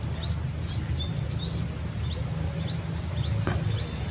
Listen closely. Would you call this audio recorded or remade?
recorded